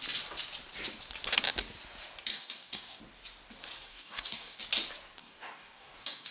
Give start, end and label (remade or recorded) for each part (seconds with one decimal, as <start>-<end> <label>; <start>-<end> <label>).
0.0-2.3 recorded; 2.3-3.0 remade; 3.0-3.9 recorded; 3.9-4.6 remade; 4.6-5.2 recorded; 5.2-6.3 remade